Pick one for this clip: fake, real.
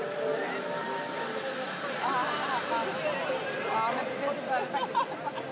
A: real